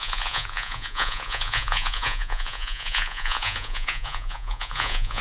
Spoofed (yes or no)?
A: yes